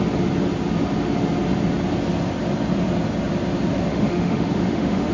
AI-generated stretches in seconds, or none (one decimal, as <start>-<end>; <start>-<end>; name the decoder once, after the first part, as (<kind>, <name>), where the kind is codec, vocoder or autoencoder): 3.9-5.1 (autoencoder, DAC-VAE)